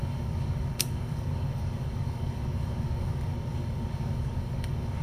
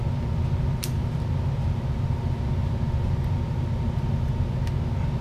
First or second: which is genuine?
second